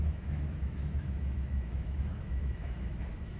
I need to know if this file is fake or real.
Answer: fake